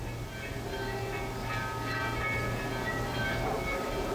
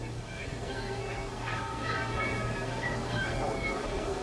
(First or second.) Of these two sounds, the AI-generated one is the second